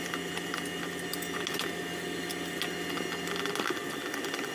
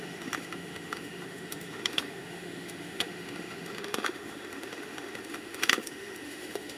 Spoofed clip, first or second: second